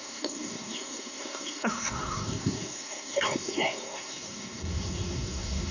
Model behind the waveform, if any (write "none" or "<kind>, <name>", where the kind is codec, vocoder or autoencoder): codec, SNAC